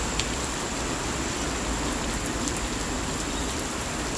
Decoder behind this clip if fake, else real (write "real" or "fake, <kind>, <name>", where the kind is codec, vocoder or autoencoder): real